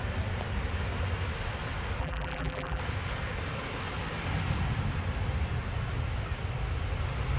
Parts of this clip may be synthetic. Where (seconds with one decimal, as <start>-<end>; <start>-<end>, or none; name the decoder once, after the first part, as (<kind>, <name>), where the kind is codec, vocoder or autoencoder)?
2.0-2.8 (vocoder, BigVGAN v2)